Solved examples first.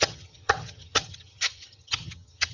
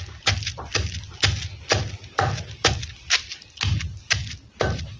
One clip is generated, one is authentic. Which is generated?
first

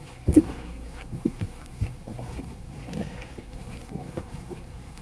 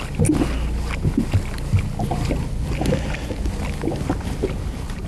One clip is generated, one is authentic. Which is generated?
first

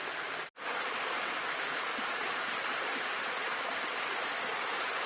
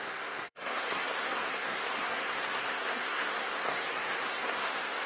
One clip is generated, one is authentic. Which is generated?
second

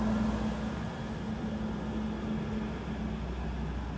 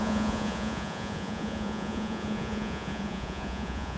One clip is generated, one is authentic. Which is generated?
second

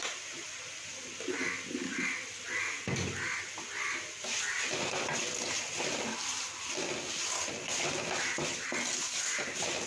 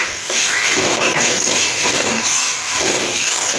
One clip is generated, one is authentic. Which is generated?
second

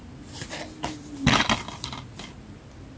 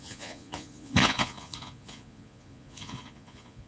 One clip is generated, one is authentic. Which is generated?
second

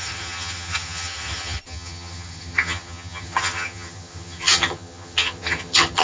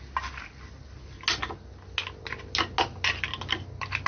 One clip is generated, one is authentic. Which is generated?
first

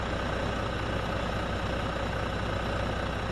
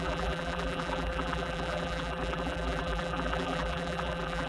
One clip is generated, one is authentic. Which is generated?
second